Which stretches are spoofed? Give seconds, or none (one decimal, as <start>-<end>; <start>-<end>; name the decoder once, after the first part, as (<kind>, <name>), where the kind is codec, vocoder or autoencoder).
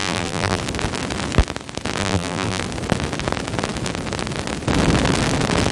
0.0-0.6 (vocoder, BigVGAN v2); 2.0-2.6